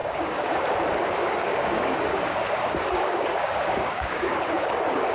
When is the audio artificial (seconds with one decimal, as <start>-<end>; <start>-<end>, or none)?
0.0-0.5; 1.2-4.3

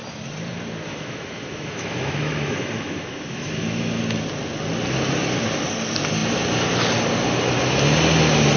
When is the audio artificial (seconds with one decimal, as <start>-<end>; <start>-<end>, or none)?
0.9-4.0

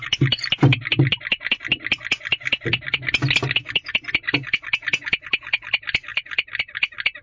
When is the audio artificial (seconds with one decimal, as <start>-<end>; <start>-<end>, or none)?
6.1-6.6

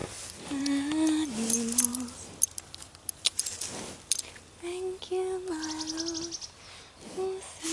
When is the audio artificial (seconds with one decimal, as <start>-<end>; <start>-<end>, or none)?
none

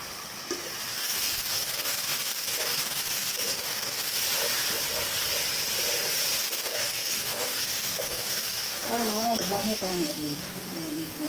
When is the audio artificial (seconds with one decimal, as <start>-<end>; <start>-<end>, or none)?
0.9-4.2; 6.4-11.3

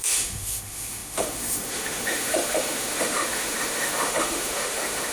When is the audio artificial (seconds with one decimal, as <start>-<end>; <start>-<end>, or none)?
0.0-5.1